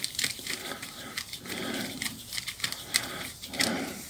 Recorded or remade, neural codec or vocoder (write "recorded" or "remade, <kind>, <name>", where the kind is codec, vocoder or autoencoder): remade, vocoder, BigVGAN v2